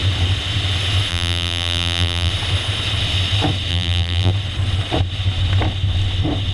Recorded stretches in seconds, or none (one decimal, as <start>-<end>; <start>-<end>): 0.0-1.1; 2.3-3.7; 4.3-6.5